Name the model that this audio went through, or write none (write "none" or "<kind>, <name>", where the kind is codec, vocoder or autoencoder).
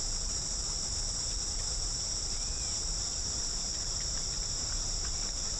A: vocoder, BigVGAN v2